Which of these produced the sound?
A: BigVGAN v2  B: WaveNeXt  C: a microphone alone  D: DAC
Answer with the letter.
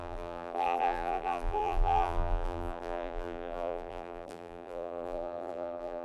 A